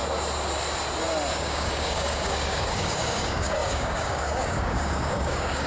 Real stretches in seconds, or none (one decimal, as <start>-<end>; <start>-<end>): 0.0-1.3